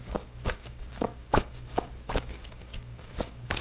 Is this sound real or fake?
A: fake